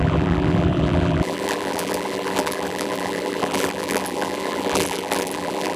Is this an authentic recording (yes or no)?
no